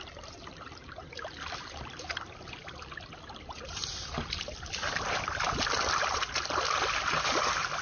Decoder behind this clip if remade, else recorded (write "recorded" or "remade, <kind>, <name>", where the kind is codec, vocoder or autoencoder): recorded